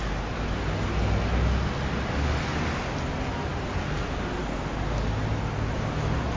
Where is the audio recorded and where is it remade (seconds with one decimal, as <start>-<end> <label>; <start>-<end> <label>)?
0.0-3.5 recorded; 3.5-4.4 remade; 4.4-6.4 recorded